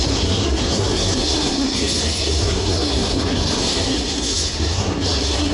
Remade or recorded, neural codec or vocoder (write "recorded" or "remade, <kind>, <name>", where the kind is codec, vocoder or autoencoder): remade, codec, SNAC